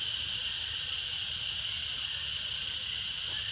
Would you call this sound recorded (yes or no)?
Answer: yes